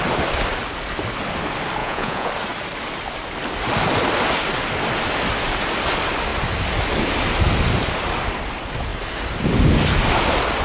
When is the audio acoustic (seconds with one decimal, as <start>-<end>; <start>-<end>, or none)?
0.0-1.8; 2.3-10.6